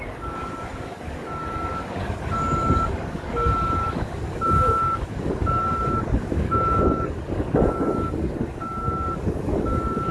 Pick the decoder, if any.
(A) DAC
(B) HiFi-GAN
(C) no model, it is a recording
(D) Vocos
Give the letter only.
A